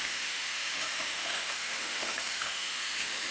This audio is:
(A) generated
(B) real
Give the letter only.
A